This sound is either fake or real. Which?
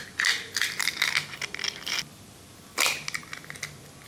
real